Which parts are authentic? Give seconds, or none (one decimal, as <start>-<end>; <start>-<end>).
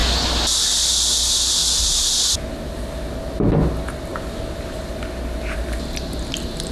0.0-6.7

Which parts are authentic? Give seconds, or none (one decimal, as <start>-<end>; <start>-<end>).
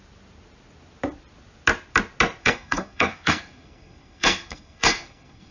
0.0-2.4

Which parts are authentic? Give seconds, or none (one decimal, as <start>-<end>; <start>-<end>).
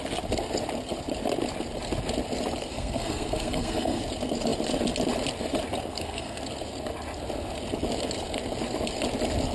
0.0-2.7; 4.0-5.9; 6.4-9.5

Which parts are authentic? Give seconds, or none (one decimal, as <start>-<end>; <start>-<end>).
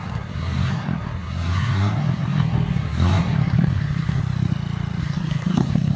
4.2-5.0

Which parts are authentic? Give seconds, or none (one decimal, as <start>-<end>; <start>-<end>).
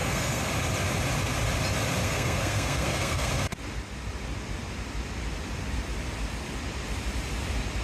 0.5-2.0; 3.3-7.8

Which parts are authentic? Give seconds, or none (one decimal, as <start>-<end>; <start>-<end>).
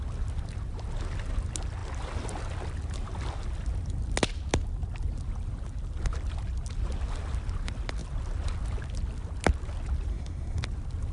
0.0-10.1; 10.6-11.1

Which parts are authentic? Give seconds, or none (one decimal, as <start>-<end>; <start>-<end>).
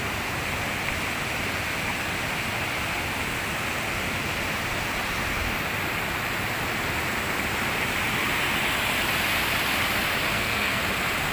0.0-10.3; 10.8-11.3